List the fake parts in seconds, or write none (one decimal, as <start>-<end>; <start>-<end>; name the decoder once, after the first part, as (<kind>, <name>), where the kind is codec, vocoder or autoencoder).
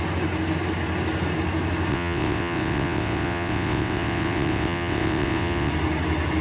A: 1.9-5.7 (vocoder, WaveNeXt)